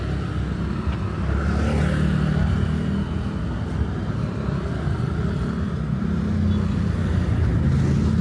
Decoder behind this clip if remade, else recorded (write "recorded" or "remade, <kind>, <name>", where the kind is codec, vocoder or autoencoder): recorded